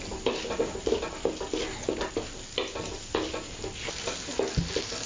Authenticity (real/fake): real